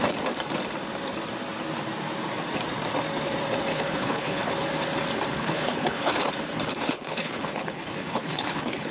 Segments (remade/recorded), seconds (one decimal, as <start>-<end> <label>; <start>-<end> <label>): 0.0-3.7 recorded; 3.7-4.5 remade; 4.5-5.3 recorded; 5.3-6.3 remade; 6.3-6.7 recorded; 6.7-8.9 remade